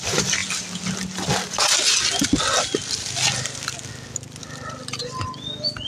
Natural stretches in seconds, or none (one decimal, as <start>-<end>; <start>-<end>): 0.0-5.9

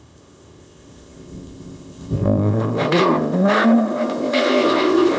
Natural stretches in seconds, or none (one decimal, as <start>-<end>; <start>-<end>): none

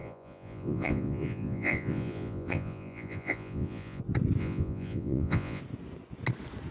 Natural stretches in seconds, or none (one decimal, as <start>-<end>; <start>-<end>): 4.0-4.4; 5.6-6.7